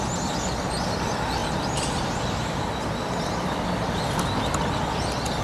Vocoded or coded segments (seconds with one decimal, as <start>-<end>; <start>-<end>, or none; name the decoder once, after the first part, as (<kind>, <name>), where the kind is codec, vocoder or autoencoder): none